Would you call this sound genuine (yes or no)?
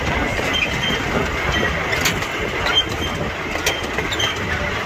yes